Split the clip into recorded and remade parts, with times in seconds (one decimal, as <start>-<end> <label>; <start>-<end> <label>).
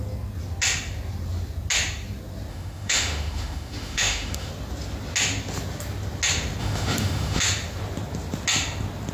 0.0-2.5 recorded; 2.5-4.5 remade; 4.5-6.6 recorded; 6.6-7.4 remade; 7.4-9.1 recorded